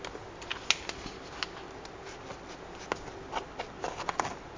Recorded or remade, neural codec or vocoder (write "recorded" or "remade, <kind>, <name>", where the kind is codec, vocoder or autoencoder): recorded